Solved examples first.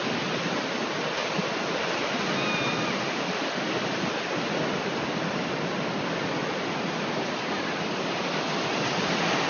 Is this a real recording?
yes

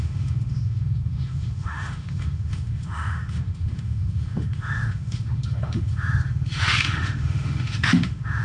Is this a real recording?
no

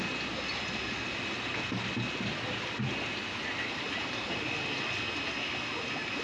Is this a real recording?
yes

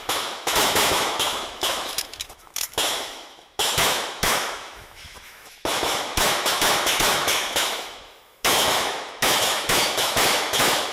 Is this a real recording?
no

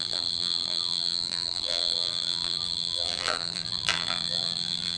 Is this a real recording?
no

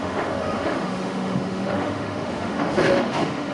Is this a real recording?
no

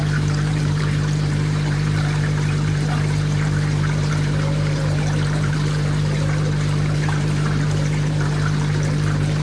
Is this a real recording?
no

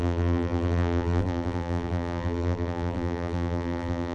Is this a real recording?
no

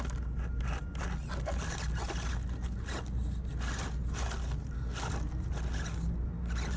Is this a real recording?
yes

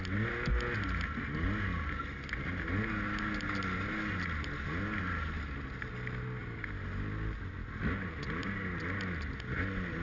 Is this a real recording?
yes